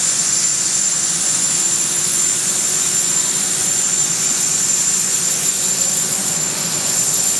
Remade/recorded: remade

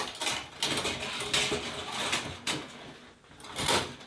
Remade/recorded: recorded